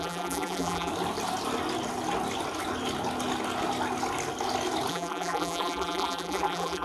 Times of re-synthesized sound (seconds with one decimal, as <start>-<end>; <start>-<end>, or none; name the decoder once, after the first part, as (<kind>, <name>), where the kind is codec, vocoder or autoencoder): 0.0-0.9 (vocoder, BigVGAN v2); 4.9-6.8

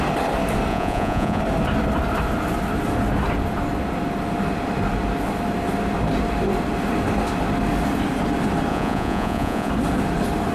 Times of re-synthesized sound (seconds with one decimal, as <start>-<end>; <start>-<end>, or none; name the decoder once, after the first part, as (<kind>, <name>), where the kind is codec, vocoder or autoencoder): 0.7-1.4 (vocoder, Vocos); 8.7-9.7

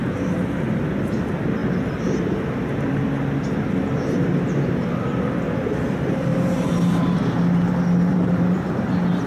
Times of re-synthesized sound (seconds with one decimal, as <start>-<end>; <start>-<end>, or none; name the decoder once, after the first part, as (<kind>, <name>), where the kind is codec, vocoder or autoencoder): 0.0-0.8 (vocoder, BigVGAN v2); 6.3-7.4; 8.1-9.3

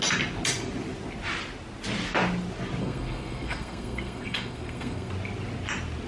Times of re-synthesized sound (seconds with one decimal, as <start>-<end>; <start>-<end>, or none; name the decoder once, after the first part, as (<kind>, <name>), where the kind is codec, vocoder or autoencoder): 2.8-5.1 (codec, SNAC)

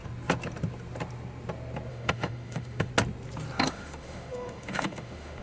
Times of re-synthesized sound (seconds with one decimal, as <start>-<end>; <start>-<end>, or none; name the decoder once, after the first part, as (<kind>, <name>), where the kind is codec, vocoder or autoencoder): 1.9-2.9 (autoencoder, DAC-VAE); 3.7-5.4

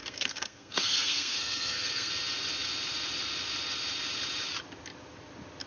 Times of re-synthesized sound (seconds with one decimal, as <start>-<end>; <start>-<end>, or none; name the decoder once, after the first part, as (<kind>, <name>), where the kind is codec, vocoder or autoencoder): 0.0-2.1 (codec, SNAC)

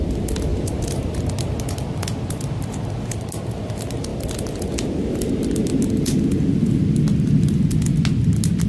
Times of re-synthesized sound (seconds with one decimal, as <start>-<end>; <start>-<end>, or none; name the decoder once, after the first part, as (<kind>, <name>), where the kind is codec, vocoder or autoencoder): 0.5-1.1 (vocoder, BigVGAN v2)

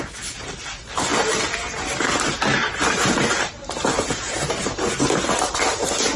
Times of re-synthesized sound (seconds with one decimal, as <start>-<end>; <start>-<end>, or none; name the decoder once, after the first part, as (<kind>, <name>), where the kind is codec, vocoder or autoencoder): 2.6-4.9 (vocoder, BigVGAN v2)